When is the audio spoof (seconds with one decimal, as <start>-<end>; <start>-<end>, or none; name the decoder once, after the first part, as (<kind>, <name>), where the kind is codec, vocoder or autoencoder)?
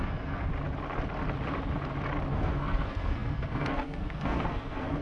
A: 0.0-0.5 (codec, SNAC); 2.3-5.0